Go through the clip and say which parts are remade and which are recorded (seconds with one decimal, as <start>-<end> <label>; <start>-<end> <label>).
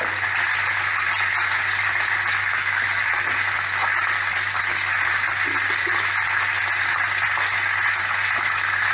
0.0-8.9 recorded